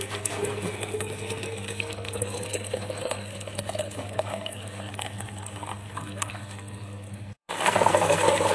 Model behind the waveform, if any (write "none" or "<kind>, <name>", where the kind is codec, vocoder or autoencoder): codec, SNAC